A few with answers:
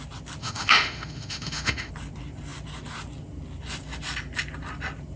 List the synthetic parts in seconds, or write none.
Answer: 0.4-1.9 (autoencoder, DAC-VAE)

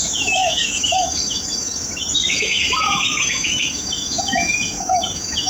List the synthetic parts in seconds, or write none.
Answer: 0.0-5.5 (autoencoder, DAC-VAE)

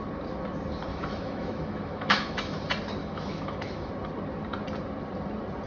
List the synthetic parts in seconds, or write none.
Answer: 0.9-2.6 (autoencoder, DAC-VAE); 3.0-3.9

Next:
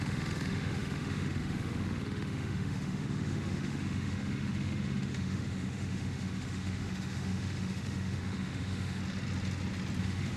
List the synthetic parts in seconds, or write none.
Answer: 0.0-9.0 (autoencoder, DAC-VAE); 10.0-10.4

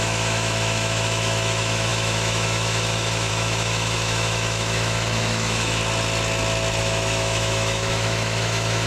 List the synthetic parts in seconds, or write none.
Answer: 0.0-5.8 (autoencoder, DAC-VAE); 6.8-8.9

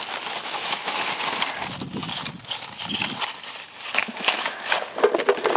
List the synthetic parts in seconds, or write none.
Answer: 0.4-1.1 (autoencoder, DAC-VAE); 4.0-4.7

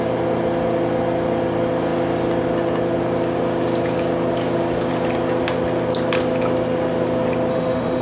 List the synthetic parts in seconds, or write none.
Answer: 7.5-8.0 (autoencoder, DAC-VAE)